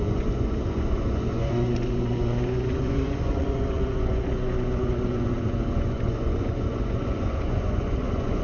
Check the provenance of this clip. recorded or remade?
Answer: remade